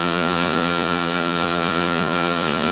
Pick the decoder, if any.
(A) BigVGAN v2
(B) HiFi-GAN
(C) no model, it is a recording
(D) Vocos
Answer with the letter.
D